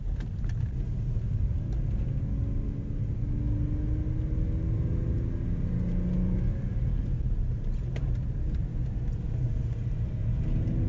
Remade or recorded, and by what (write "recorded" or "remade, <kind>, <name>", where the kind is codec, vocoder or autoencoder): recorded